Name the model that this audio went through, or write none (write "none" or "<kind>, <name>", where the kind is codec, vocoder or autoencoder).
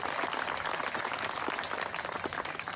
none